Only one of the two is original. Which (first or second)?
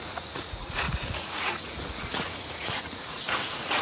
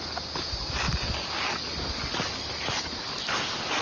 second